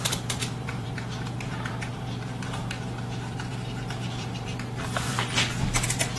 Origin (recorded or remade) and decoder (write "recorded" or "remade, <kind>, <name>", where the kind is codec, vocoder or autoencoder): remade, vocoder, BigVGAN v2